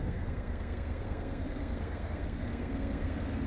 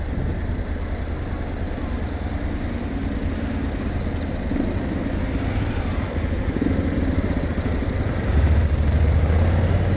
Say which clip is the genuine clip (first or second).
second